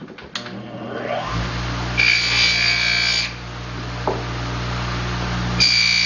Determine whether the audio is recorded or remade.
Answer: recorded